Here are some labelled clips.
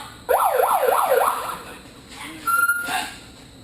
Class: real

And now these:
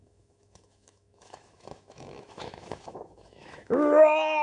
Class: fake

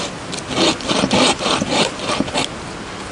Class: real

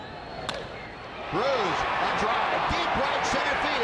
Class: real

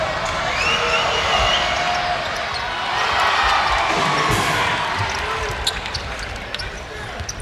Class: real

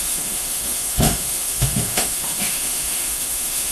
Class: fake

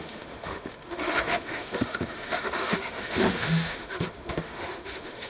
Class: fake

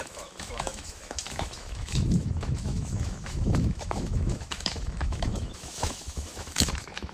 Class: fake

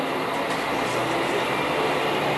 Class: real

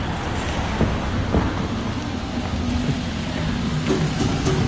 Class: real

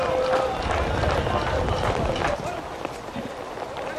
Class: real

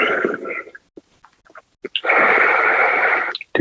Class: real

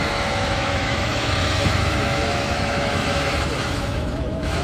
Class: fake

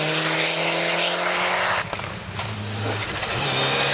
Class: real